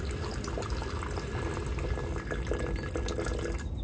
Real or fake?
real